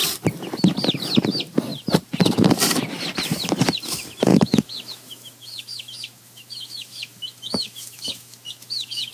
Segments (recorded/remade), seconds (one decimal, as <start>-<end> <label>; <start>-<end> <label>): 0.0-4.3 recorded; 4.3-9.1 remade

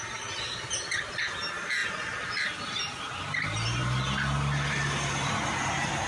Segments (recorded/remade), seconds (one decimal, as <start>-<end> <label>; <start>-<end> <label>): 0.0-6.1 recorded

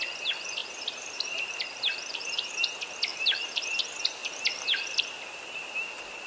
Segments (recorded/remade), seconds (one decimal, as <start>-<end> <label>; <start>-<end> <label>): 0.0-0.6 recorded; 0.6-2.5 remade; 2.5-3.1 recorded; 3.1-3.8 remade; 3.8-4.2 recorded; 4.2-5.0 remade; 5.0-6.3 recorded

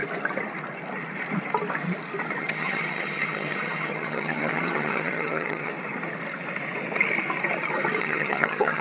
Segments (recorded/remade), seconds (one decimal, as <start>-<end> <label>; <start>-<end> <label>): 0.0-2.4 recorded; 2.4-5.7 remade; 5.7-8.0 recorded; 8.0-8.8 remade

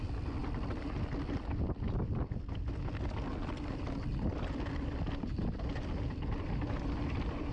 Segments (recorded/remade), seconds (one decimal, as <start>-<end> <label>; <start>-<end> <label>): 0.0-3.3 recorded; 3.3-7.5 remade

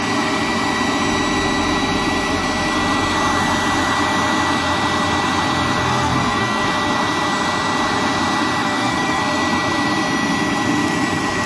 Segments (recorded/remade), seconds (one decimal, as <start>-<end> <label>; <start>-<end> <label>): 0.0-5.8 recorded; 5.8-6.7 remade; 6.7-8.6 recorded; 8.6-9.2 remade; 9.2-11.5 recorded